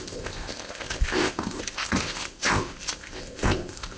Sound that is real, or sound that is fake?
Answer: fake